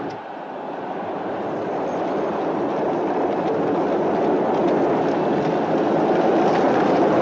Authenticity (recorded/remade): recorded